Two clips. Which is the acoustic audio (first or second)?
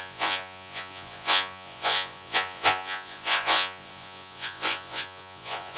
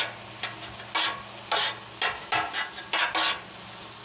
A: second